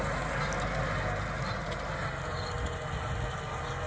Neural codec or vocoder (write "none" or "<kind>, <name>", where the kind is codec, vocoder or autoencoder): none